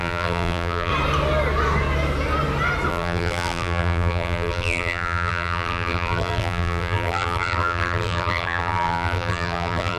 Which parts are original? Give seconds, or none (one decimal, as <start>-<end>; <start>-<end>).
0.9-2.9